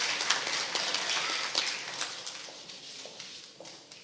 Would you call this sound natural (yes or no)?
yes